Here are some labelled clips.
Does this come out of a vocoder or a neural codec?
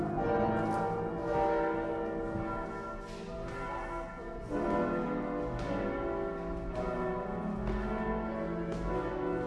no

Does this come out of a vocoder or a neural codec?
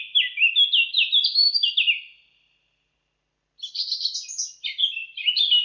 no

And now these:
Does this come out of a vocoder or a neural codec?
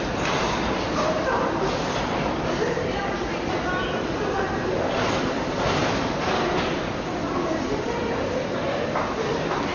no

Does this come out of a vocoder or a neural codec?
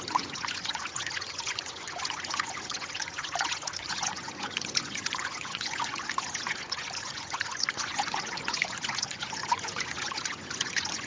yes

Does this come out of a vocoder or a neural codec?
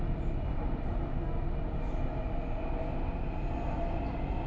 no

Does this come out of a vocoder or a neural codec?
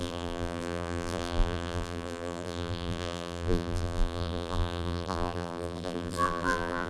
yes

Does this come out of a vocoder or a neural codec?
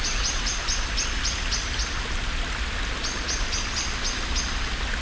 no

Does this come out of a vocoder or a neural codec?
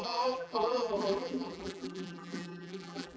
yes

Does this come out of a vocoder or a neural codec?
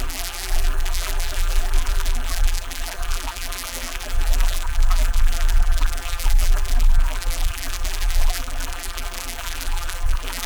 yes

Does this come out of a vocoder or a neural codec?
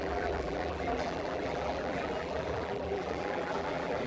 yes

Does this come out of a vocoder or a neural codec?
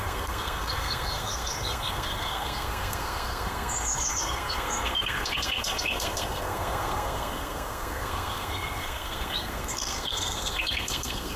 yes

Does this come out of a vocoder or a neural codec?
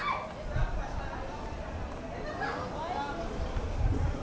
no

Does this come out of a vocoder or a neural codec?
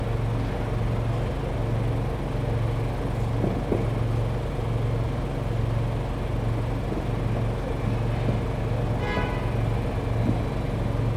no